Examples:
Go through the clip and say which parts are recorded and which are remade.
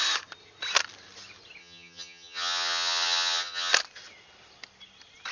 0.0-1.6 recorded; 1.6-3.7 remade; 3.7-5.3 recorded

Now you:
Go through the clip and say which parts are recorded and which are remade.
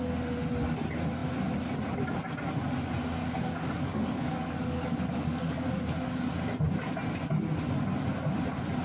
0.0-3.2 recorded; 3.2-6.3 remade; 6.3-8.8 recorded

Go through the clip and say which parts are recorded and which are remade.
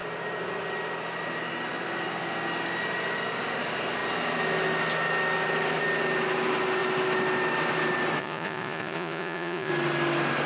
0.0-8.2 recorded; 8.2-9.7 remade; 9.7-10.5 recorded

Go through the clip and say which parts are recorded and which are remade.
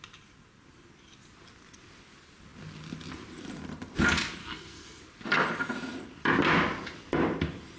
0.0-4.4 recorded; 4.4-5.0 remade; 5.0-7.8 recorded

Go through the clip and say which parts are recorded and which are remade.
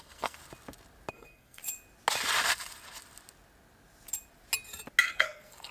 0.0-0.4 remade; 0.4-1.1 recorded; 1.1-1.6 remade; 1.6-5.0 recorded; 5.0-5.7 remade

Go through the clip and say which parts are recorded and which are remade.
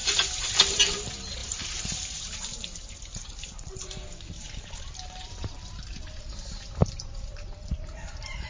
0.0-0.8 remade; 0.8-1.4 recorded; 1.4-6.3 remade; 6.3-6.8 recorded; 6.8-8.5 remade